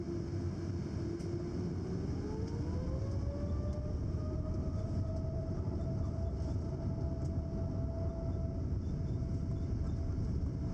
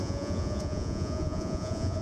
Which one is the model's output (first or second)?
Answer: second